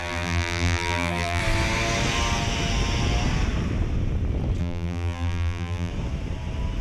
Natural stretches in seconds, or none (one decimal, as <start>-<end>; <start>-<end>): 1.4-4.6; 5.9-6.8